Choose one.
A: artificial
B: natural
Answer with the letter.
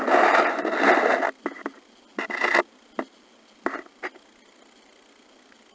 B